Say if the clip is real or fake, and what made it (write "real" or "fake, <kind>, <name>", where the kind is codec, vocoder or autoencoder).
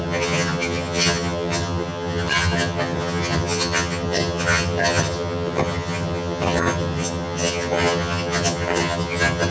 fake, vocoder, HiFi-GAN